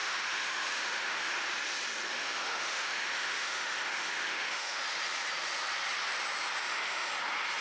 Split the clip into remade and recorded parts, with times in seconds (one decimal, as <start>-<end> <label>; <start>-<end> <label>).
0.0-1.3 remade; 1.3-2.1 recorded; 2.1-4.8 remade; 4.8-6.6 recorded; 6.6-7.1 remade; 7.1-7.6 recorded